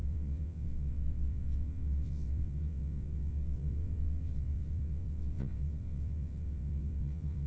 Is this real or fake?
fake